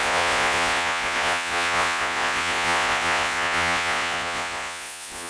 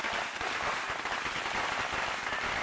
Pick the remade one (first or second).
first